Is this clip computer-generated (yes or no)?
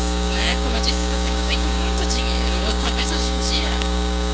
yes